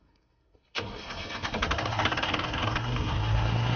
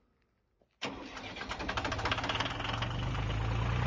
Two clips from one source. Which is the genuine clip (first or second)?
second